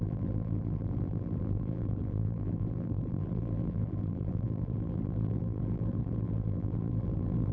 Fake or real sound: fake